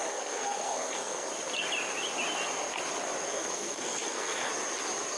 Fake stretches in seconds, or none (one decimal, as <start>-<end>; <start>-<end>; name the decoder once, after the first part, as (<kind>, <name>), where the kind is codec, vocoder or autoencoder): 0.0-1.3 (codec, SNAC); 3.3-4.5